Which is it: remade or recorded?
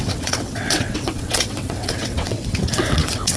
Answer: remade